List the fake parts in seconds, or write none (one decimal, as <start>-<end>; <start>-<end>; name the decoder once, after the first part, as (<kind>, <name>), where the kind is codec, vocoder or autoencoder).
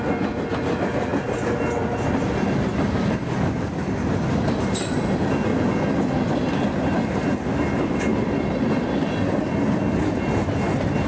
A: none